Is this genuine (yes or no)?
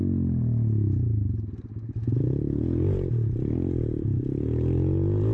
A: yes